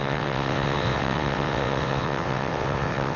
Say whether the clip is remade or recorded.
remade